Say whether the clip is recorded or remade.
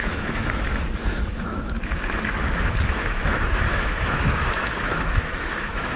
remade